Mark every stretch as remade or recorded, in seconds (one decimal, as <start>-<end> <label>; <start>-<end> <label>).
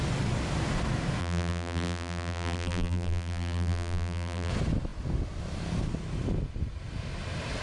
0.0-1.2 recorded; 1.2-4.5 remade; 4.5-7.6 recorded